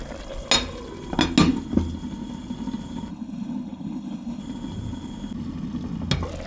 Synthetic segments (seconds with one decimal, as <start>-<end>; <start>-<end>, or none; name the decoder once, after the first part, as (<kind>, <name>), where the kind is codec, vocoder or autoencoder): 3.1-4.4 (codec, HILCodec)